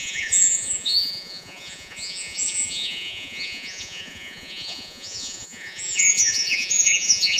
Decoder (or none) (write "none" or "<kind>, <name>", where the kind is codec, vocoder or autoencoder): vocoder, Vocos